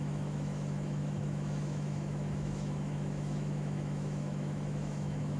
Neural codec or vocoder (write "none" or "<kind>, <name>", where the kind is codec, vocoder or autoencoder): autoencoder, DAC-VAE